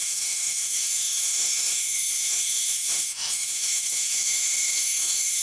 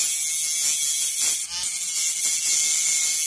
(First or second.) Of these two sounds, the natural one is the second